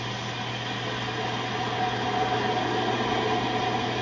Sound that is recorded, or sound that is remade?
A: recorded